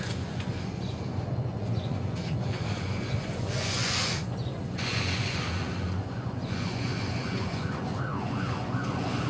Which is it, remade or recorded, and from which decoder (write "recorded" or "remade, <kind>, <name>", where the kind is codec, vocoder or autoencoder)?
remade, vocoder, Vocos